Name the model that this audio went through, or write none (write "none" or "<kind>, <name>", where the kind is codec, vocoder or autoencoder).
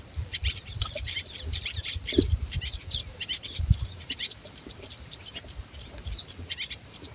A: vocoder, BigVGAN v2